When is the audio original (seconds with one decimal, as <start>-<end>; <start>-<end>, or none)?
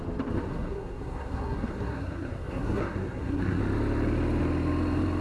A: 0.0-0.5; 3.6-5.2